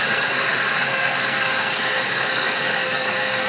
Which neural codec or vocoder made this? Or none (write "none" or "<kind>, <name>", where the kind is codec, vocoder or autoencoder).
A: codec, SNAC